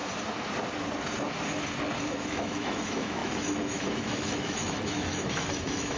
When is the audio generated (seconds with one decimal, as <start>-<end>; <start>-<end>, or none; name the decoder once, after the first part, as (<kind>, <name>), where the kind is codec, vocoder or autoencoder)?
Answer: 2.0-6.0 (autoencoder, DAC-VAE)